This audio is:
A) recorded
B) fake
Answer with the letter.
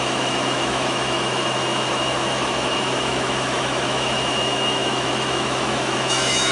B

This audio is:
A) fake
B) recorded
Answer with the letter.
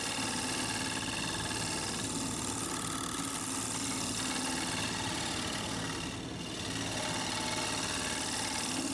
B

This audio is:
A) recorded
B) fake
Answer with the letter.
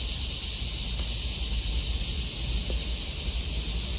A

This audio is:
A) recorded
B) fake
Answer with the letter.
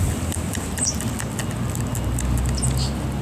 A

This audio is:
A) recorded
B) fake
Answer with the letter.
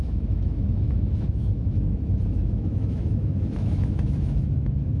B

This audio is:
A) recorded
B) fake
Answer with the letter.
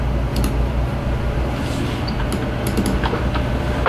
A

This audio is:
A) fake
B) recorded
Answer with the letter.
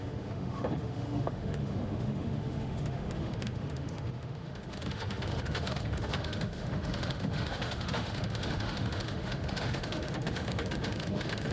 A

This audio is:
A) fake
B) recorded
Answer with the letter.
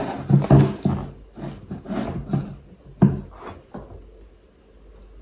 B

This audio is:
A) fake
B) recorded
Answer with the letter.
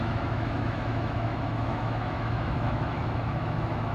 A